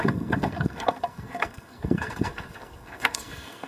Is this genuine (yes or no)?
no